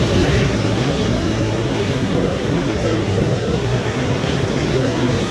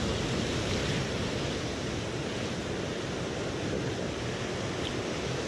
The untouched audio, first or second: second